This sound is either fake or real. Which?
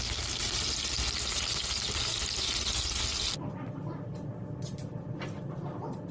real